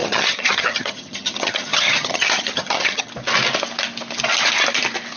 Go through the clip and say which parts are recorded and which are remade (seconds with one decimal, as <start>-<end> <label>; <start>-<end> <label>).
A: 0.0-3.1 remade; 3.1-5.2 recorded